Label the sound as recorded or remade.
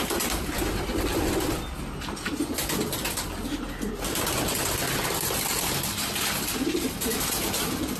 recorded